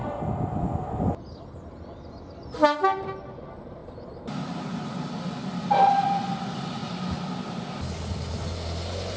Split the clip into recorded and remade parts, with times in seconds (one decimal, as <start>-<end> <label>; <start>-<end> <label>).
0.0-9.2 recorded